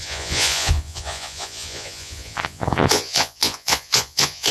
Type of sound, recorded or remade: remade